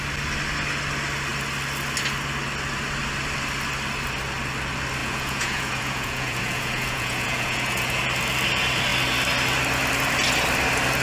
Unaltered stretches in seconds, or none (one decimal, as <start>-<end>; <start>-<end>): 0.0-5.0; 8.0-11.0